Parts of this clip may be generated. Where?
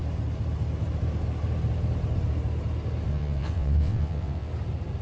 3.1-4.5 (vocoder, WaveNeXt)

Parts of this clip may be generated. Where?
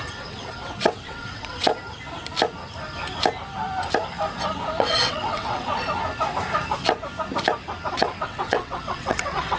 0.0-1.7 (vocoder, WaveNeXt); 4.8-5.7; 7.9-9.6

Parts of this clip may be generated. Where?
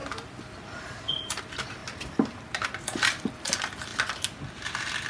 none